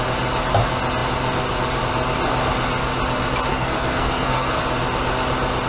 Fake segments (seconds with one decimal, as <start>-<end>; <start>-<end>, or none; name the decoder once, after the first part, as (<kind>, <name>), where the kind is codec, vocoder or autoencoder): 3.5-4.6 (codec, SNAC)